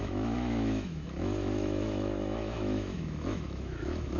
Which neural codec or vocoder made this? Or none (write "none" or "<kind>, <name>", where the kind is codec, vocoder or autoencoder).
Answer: autoencoder, DAC-VAE